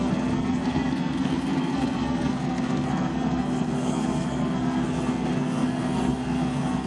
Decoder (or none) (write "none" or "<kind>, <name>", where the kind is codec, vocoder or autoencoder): codec, SNAC